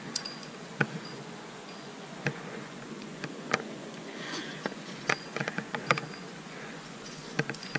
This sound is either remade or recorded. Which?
remade